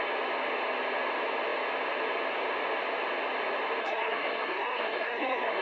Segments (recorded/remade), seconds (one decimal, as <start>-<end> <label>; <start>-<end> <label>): 0.0-3.8 recorded; 3.8-5.6 remade